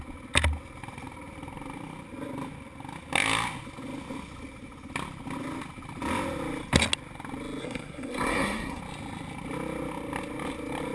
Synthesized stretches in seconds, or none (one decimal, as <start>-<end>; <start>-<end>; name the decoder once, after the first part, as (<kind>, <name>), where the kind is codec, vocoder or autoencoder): 7.6-8.8 (codec, SNAC)